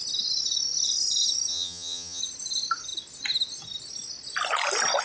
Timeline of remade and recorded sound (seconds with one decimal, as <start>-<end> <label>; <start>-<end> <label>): 0.0-1.5 recorded; 1.5-2.2 remade; 2.2-5.0 recorded